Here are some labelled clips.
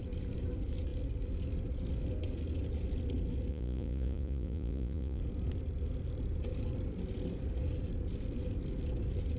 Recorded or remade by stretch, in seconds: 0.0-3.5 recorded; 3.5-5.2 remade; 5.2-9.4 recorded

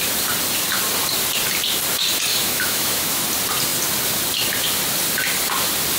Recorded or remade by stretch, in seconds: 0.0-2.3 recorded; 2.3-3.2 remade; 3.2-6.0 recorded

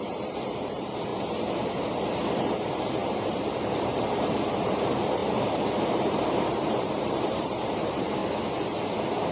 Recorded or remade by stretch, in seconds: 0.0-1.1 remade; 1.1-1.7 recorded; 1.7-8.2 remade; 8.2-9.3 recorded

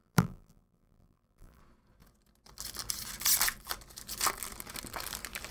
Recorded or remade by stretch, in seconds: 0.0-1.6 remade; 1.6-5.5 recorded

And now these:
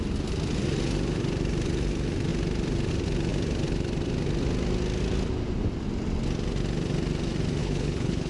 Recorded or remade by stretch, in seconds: 0.0-7.6 recorded; 7.6-8.3 remade